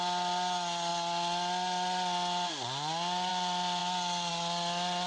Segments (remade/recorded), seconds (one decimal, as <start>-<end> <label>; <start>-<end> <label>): 0.0-5.1 recorded

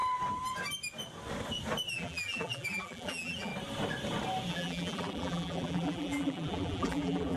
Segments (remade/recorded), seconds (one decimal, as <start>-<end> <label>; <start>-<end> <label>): 0.0-1.9 recorded; 1.9-3.5 remade; 3.5-4.5 recorded; 4.5-7.4 remade